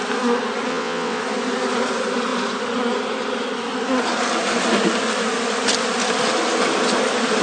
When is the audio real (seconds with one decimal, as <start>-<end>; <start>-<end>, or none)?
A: 0.0-0.7; 1.2-7.4